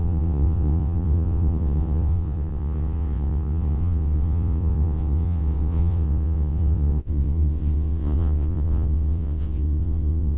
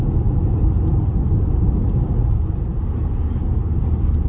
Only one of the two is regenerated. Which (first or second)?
first